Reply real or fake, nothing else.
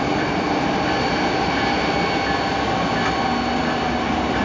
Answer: real